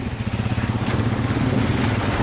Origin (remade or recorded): recorded